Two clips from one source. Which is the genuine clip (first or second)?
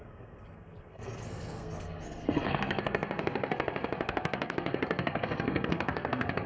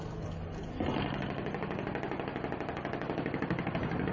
second